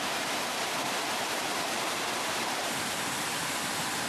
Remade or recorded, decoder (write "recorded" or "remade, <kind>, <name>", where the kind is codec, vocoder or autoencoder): recorded